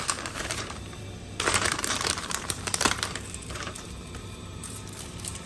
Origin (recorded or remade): remade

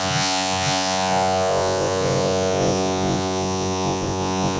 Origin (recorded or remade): remade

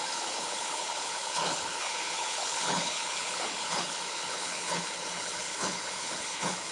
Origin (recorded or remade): remade